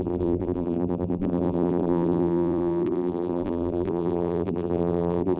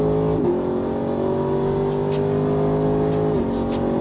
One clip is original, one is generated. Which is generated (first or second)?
first